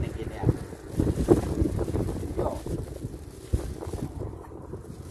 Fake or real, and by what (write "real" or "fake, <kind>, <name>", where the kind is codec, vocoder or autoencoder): real